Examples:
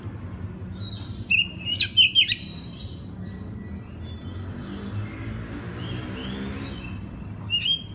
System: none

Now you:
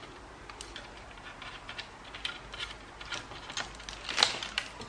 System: none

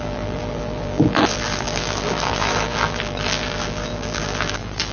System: vocoder, BigVGAN v2